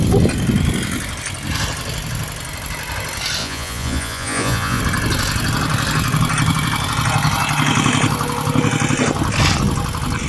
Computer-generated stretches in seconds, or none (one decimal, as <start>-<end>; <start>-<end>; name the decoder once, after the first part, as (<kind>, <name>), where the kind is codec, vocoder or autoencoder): 3.4-4.8 (vocoder, Vocos)